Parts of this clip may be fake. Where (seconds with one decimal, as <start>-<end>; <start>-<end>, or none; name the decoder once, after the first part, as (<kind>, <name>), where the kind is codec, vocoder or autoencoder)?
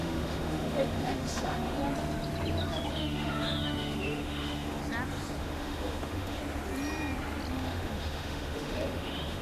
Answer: 0.0-1.8 (autoencoder, DAC-VAE); 2.9-4.8; 5.4-6.4; 7.5-9.4